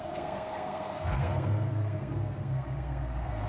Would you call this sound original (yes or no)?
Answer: no